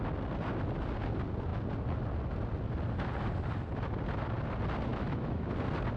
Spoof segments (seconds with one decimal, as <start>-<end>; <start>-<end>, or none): 4.9-5.5